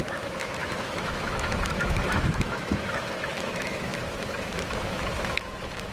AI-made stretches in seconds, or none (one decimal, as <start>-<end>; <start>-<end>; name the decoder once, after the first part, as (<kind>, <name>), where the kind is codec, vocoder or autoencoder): 0.0-5.9 (autoencoder, DAC-VAE)